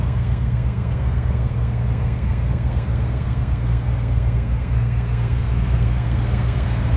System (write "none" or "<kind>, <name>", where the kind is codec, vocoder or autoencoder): codec, SNAC